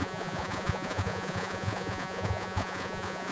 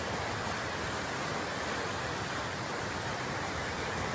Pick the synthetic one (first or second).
first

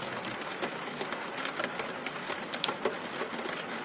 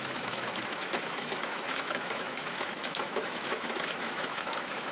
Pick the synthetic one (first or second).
second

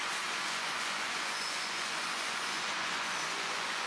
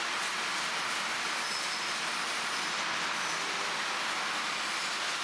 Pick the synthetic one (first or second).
first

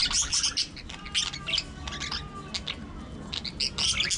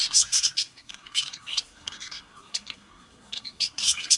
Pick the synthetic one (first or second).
second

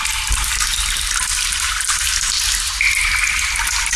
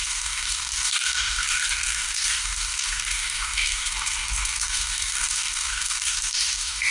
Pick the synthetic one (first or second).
second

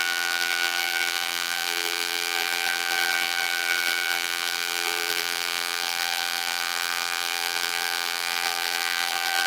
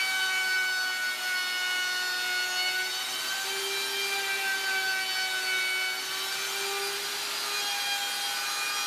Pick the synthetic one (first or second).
first